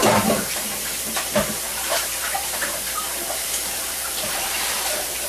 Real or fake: fake